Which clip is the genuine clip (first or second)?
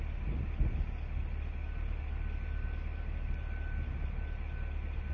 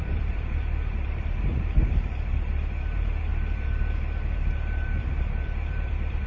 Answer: first